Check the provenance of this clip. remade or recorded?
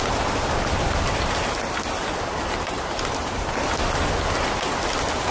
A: recorded